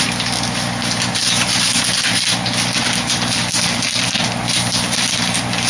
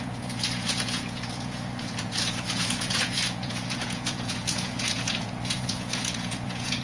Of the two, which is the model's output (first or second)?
second